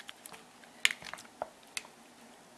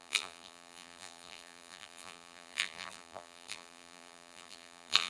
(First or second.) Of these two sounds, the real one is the first